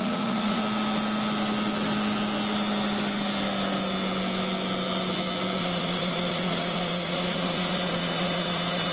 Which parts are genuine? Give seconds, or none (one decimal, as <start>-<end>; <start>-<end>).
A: 0.6-5.6